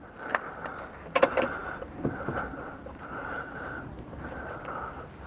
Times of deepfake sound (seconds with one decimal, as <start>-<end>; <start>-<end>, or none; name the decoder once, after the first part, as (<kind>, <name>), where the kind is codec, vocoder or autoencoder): none